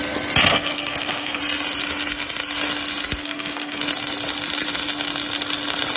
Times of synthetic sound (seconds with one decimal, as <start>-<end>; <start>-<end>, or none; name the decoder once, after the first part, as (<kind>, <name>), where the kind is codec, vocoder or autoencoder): 0.5-1.4 (codec, SNAC); 3.2-3.8